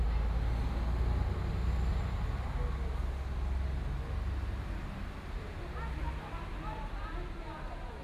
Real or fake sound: real